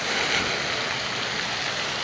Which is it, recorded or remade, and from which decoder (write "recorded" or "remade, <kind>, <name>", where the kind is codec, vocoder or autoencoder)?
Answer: recorded